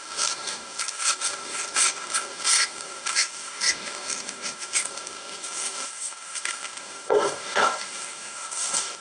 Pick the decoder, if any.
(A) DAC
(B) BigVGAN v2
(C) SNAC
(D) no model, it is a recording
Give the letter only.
A